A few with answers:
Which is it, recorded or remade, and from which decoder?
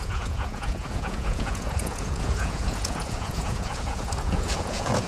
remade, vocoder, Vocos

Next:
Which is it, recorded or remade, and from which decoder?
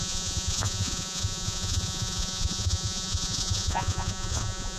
remade, vocoder, Vocos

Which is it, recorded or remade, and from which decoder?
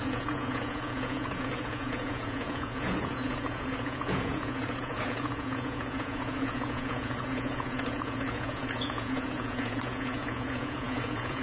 remade, vocoder, Vocos